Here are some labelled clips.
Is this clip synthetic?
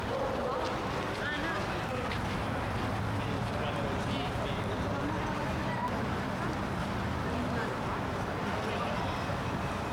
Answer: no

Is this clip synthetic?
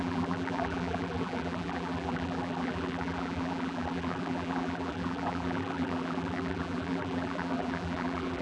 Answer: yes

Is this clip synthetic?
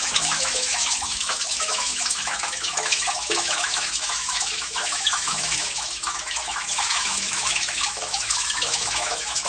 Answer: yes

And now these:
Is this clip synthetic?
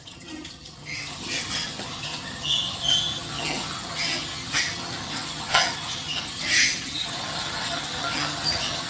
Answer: yes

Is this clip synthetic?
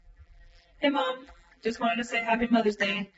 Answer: yes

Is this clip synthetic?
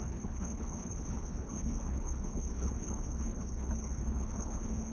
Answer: yes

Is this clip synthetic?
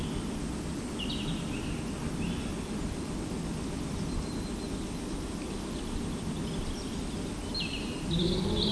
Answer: no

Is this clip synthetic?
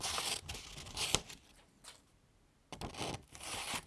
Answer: no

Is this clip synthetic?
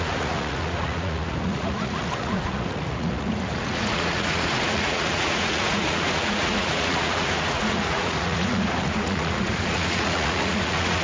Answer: yes